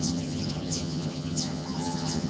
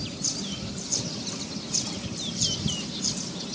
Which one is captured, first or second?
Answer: second